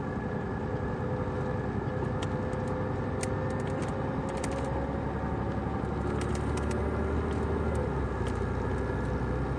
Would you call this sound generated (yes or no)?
no